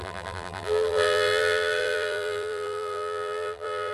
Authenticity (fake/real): fake